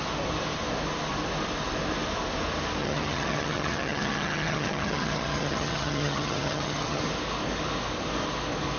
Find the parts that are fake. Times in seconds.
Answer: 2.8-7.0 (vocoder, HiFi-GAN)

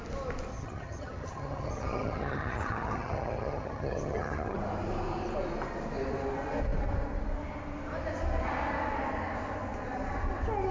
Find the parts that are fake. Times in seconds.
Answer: 0.5-4.6 (vocoder, HiFi-GAN)

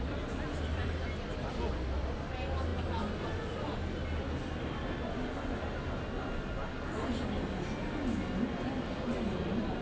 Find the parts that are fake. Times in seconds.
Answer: none

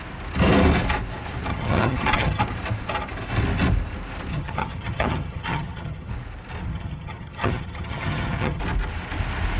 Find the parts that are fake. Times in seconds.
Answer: 1.5-2.4 (vocoder, HiFi-GAN); 4.3-6.1; 6.7-8.6

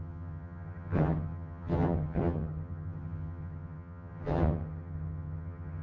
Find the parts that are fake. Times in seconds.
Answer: 0.0-5.8 (vocoder, HiFi-GAN)

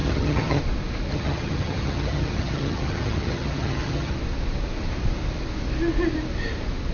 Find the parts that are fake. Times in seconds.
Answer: 0.0-0.6 (vocoder, HiFi-GAN); 1.1-4.1

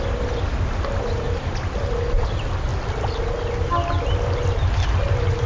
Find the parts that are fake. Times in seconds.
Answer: none

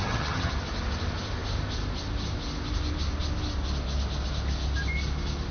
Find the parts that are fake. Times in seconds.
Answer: 0.0-0.5 (vocoder, HiFi-GAN)